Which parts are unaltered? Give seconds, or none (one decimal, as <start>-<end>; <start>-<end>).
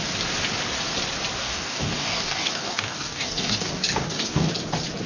0.0-1.4; 4.5-5.1